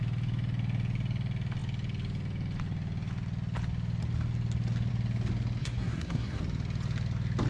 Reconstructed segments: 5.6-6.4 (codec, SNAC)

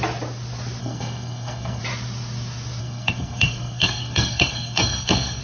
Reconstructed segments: 0.8-1.8 (codec, SNAC); 2.8-5.4

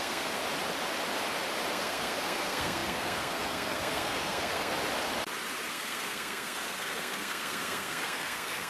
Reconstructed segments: 0.0-0.4 (codec, SNAC); 1.7-4.7; 5.7-8.7

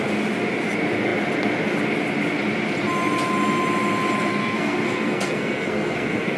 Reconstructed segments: 4.4-6.4 (codec, SNAC)

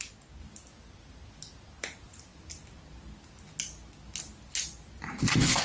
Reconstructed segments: none